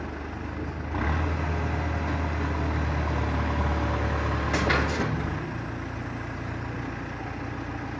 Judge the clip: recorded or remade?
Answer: recorded